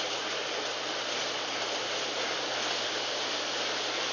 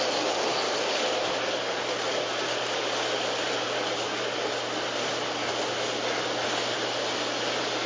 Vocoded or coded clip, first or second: first